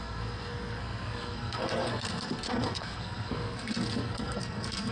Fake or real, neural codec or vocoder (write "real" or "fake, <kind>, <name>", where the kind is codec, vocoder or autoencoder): fake, codec, SNAC